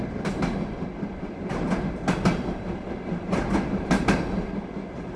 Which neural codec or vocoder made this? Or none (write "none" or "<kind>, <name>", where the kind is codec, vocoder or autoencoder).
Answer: none